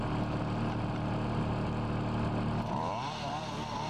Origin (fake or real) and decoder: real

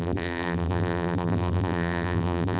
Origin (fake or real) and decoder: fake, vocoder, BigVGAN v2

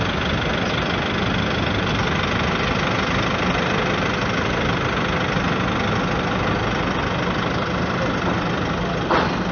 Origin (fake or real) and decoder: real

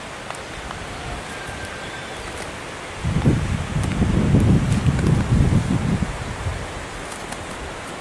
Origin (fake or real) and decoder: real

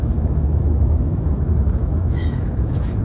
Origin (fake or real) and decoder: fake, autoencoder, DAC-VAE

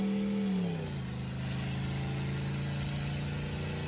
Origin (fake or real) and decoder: real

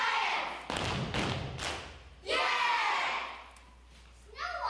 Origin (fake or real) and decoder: real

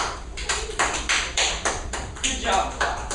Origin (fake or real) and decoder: fake, vocoder, BigVGAN v2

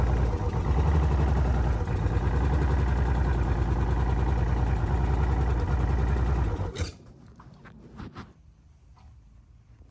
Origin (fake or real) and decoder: real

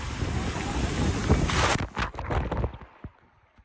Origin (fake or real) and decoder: real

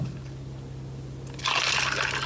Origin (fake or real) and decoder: real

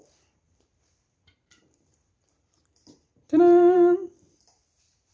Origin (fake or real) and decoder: fake, vocoder, BigVGAN v2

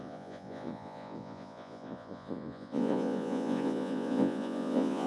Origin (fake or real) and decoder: fake, vocoder, Vocos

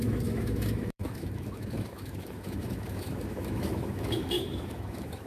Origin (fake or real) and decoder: fake, autoencoder, DAC-VAE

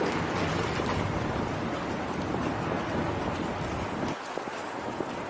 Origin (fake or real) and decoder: real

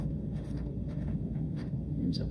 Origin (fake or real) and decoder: fake, autoencoder, DAC-VAE